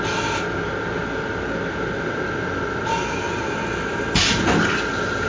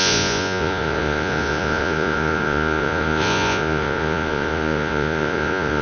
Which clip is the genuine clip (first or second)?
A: first